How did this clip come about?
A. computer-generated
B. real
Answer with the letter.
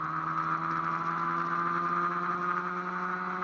B